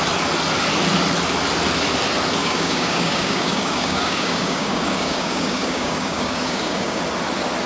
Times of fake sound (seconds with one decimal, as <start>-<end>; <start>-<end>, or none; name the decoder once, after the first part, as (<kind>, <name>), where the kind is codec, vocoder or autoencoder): 2.4-7.0 (codec, DAC)

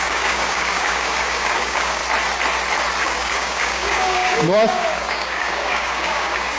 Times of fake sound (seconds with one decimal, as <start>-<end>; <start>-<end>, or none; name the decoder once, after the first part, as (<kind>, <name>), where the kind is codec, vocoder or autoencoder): 0.0-2.0 (codec, DAC); 3.0-6.6